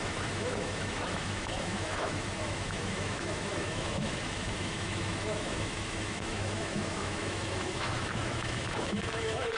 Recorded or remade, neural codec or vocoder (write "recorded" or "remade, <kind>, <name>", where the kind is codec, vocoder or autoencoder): remade, autoencoder, DAC-VAE